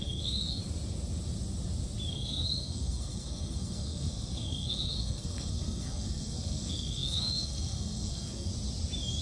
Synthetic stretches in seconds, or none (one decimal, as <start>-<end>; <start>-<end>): 0.0-0.6; 2.1-8.5